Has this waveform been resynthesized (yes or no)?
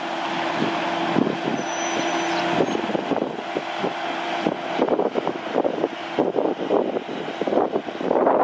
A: no